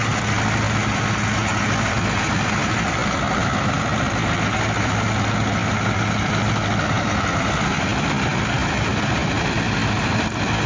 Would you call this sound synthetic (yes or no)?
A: no